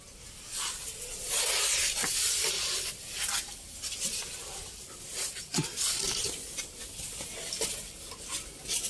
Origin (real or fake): real